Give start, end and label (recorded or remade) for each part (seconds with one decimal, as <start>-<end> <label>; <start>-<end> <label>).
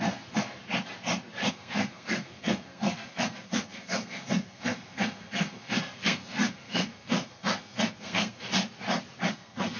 0.0-0.6 remade; 0.6-1.5 recorded; 1.5-8.5 remade; 8.5-9.3 recorded; 9.3-9.8 remade